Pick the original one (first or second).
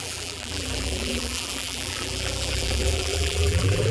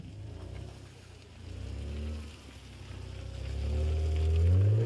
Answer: second